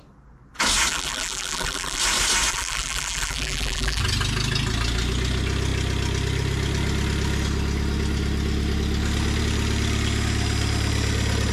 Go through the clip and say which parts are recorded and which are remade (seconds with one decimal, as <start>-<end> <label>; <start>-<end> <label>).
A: 0.0-0.9 recorded; 0.9-2.0 remade; 2.0-2.5 recorded; 2.5-4.0 remade; 4.0-11.5 recorded